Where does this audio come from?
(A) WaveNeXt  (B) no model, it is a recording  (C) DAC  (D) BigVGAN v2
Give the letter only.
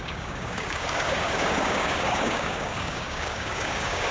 C